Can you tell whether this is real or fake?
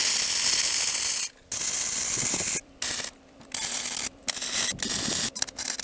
real